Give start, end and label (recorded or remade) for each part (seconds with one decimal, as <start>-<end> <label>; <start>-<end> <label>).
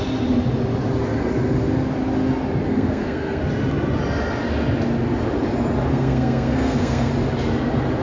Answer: 0.0-2.7 recorded; 2.7-3.4 remade; 3.4-5.9 recorded; 5.9-7.1 remade; 7.1-8.0 recorded